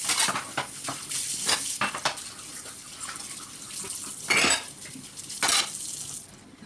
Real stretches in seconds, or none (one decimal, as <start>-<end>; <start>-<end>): 0.0-6.7